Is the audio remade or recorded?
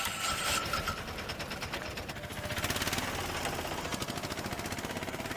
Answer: recorded